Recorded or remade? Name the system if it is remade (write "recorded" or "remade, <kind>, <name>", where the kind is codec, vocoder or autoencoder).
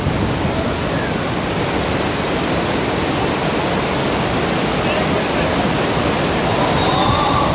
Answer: recorded